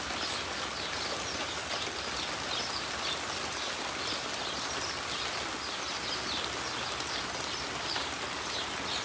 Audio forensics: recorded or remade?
recorded